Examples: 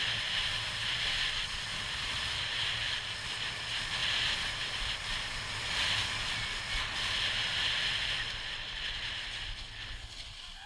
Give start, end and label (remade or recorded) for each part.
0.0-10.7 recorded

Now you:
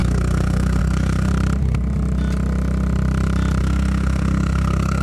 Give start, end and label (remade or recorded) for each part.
0.0-1.3 remade; 1.3-3.6 recorded; 3.6-5.0 remade

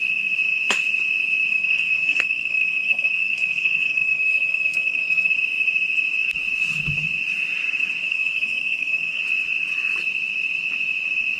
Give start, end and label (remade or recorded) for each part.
0.0-1.5 recorded; 1.5-5.3 remade; 5.3-8.0 recorded; 8.0-9.2 remade; 9.2-11.4 recorded

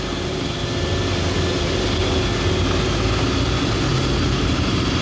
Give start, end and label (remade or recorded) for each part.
0.0-5.0 recorded

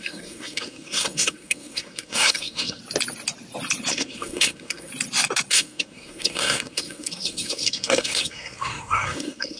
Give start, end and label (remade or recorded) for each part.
0.0-2.8 remade; 2.8-3.9 recorded; 3.9-4.9 remade; 4.9-5.5 recorded; 5.5-9.6 remade